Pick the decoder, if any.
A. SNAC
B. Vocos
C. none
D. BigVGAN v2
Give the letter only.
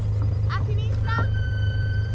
D